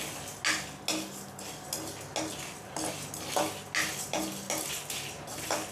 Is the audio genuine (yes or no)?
yes